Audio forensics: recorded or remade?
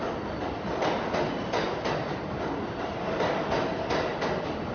recorded